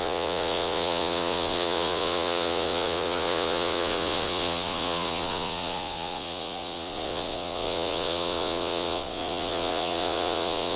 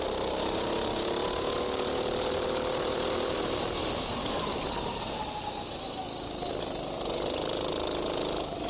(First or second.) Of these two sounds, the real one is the second